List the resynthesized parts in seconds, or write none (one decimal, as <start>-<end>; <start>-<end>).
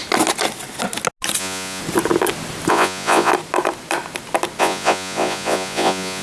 1.4-1.8; 2.7-3.3; 4.6-6.2